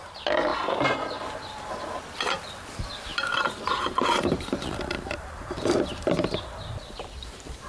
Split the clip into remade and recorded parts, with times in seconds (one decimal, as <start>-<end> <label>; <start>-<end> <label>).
0.0-0.5 recorded; 0.5-1.8 remade; 1.8-3.1 recorded; 3.1-6.4 remade; 6.4-7.7 recorded